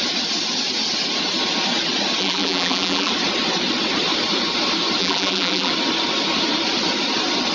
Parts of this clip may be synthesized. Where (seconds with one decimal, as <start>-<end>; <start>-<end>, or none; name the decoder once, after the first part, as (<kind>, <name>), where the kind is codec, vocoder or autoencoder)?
2.2-3.1 (vocoder, BigVGAN v2); 5.0-5.7